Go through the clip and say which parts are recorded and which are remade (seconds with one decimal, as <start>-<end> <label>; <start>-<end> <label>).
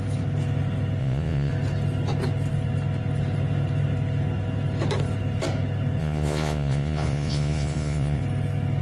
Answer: 0.0-1.0 recorded; 1.0-1.5 remade; 1.5-6.0 recorded; 6.0-8.2 remade; 8.2-8.8 recorded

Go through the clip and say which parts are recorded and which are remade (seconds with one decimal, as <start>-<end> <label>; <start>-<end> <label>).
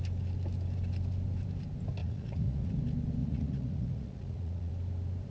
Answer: 0.0-2.0 recorded; 2.0-2.8 remade; 2.8-3.2 recorded; 3.2-4.7 remade; 4.7-5.3 recorded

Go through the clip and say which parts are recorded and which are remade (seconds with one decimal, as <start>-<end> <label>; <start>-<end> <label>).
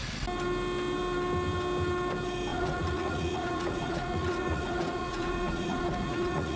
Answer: 0.0-2.5 recorded; 2.5-6.6 remade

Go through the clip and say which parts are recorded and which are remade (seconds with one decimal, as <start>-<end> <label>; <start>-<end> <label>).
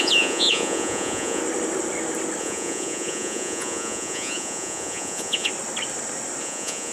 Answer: 0.0-1.4 remade; 1.4-2.4 recorded; 2.4-5.5 remade; 5.5-6.4 recorded; 6.4-6.9 remade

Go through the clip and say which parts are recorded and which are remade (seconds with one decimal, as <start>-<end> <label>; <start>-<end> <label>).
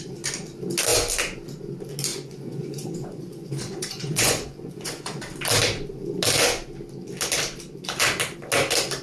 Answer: 0.0-2.1 recorded; 2.1-5.2 remade; 5.2-9.0 recorded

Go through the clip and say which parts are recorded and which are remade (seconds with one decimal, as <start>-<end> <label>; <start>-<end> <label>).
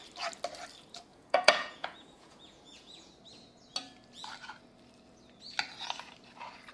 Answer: 0.0-1.1 recorded; 1.1-3.1 remade; 3.1-6.7 recorded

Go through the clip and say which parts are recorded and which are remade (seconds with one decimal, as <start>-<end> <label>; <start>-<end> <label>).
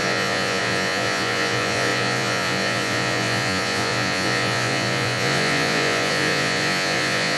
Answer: 0.0-7.4 remade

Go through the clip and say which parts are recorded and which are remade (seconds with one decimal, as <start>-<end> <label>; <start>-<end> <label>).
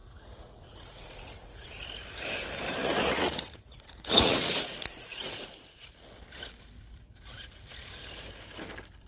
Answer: 0.0-1.7 remade; 1.7-2.8 recorded; 2.8-5.9 remade; 5.9-9.1 recorded